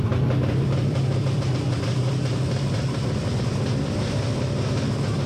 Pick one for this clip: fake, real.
fake